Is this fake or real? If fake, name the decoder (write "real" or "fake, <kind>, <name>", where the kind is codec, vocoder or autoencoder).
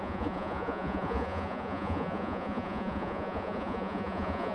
fake, vocoder, Vocos